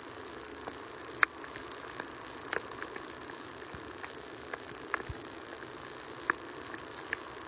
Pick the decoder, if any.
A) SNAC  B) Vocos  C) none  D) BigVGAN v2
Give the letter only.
C